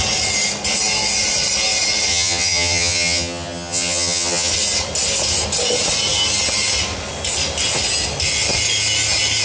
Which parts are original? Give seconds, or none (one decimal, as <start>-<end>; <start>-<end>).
0.0-2.1; 4.5-9.4